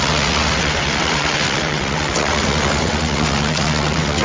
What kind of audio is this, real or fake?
fake